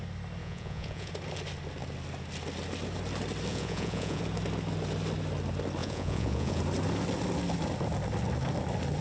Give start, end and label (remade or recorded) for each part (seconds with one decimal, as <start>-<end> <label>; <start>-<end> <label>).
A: 0.0-0.4 recorded; 0.4-1.1 remade; 1.1-3.5 recorded; 3.5-4.2 remade; 4.2-5.8 recorded; 5.8-6.6 remade; 6.6-9.0 recorded